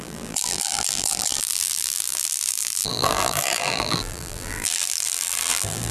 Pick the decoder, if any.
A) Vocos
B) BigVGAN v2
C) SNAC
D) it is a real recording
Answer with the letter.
B